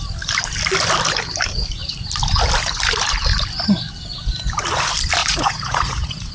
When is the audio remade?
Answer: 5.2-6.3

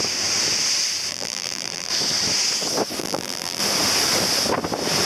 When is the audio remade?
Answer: 1.1-1.9; 3.0-3.6

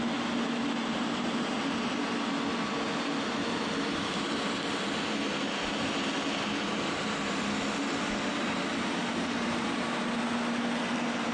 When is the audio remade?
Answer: 0.8-2.1

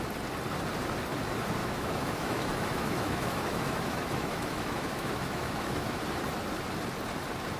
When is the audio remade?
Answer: 1.6-6.0

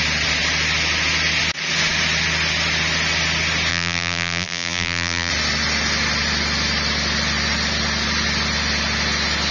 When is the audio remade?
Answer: 3.7-5.3

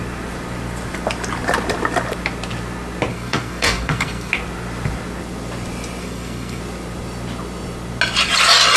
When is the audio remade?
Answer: 3.1-4.3; 6.0-6.6

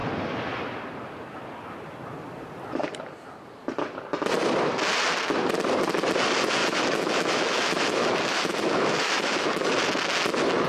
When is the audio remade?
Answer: 6.6-9.7